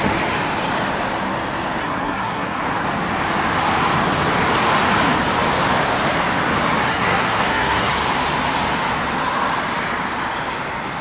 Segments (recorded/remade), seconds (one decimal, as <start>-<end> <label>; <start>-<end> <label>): 0.0-1.8 recorded; 1.8-2.6 remade; 2.6-6.9 recorded; 6.9-7.9 remade; 7.9-11.0 recorded